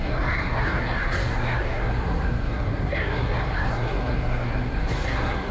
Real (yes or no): no